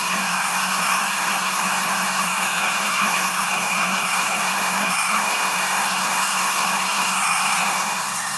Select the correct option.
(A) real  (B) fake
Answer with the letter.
B